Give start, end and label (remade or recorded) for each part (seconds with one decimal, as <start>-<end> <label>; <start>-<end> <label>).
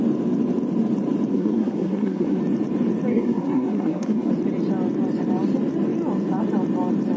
0.0-1.3 recorded; 1.3-2.4 remade; 2.4-3.1 recorded; 3.1-4.3 remade; 4.3-7.2 recorded